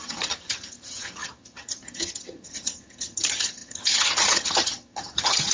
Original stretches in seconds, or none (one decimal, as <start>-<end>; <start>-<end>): none